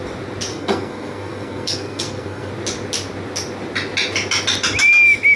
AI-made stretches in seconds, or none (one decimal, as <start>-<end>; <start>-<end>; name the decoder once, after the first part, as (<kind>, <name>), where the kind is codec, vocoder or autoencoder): 0.5-2.5 (codec, SNAC)